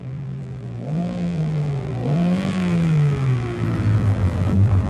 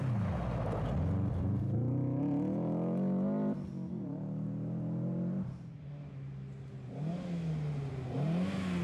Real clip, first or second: second